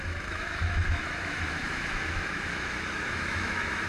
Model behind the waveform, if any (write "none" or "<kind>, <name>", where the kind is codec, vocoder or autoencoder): autoencoder, DAC-VAE